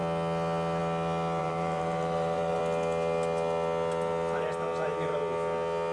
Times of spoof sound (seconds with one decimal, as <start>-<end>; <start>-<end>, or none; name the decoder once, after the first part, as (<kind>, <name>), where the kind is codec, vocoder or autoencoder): 1.4-2.6 (vocoder, BigVGAN v2)